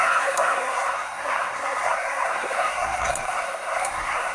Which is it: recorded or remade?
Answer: remade